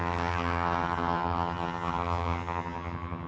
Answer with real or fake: fake